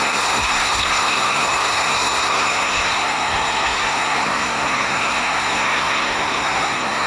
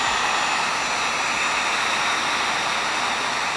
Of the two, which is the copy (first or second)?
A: first